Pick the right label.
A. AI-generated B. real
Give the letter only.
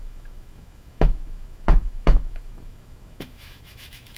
A